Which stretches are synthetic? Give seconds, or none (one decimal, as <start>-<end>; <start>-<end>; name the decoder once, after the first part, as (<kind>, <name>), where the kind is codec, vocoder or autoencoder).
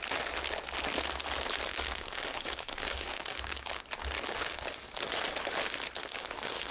1.7-3.8 (codec, DAC); 4.4-5.0; 6.0-6.7